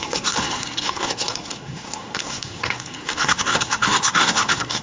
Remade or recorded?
remade